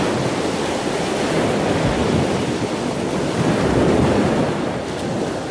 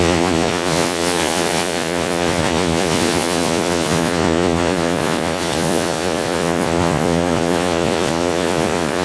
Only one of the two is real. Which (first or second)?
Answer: first